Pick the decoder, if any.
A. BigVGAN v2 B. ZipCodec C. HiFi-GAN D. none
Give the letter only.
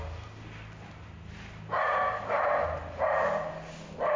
D